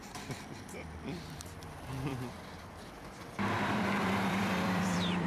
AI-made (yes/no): yes